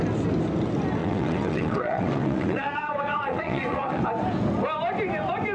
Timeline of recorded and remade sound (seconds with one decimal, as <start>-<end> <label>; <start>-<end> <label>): 0.0-1.0 recorded; 1.0-4.0 remade; 4.0-5.5 recorded